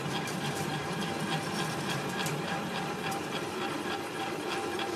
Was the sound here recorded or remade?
remade